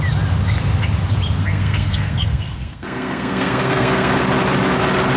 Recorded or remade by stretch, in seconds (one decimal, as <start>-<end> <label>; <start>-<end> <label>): 0.0-1.4 recorded; 1.4-4.1 remade; 4.1-5.2 recorded